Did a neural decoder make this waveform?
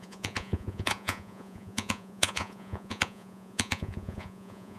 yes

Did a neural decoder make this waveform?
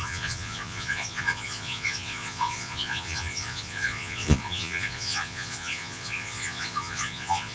yes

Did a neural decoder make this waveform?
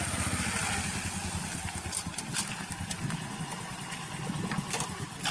no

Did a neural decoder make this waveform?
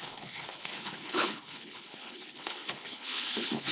yes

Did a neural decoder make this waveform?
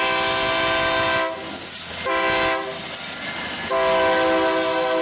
no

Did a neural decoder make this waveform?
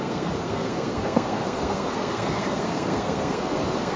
yes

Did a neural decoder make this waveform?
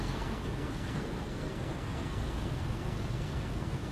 yes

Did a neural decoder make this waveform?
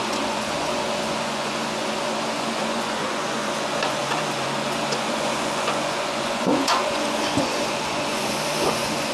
yes